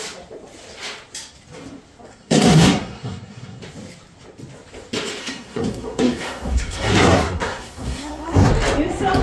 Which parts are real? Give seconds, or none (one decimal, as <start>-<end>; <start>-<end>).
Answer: 0.0-2.1; 3.6-5.2; 8.5-9.2